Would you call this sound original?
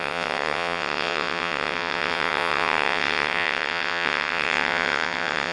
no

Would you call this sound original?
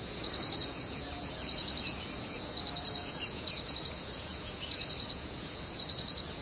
no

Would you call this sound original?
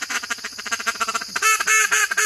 yes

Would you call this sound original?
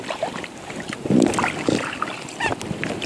yes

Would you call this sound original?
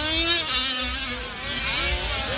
yes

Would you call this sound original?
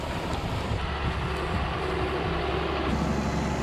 yes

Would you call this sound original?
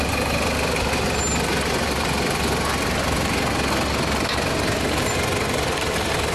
yes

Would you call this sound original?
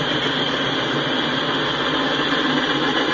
yes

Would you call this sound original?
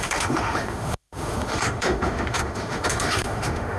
no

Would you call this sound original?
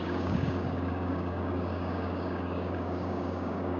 no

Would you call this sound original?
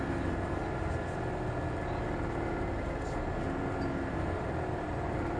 yes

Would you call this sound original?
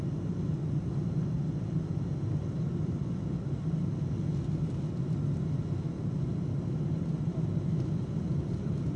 yes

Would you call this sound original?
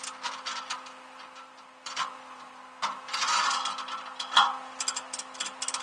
yes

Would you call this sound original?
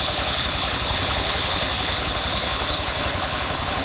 no